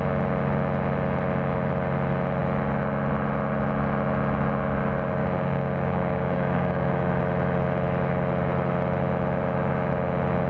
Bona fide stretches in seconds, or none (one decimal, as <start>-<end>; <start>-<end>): 0.0-5.2; 6.9-10.5